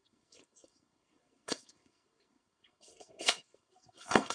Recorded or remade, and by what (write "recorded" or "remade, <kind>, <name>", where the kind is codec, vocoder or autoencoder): remade, codec, SNAC